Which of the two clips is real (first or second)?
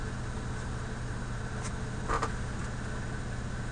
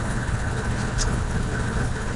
first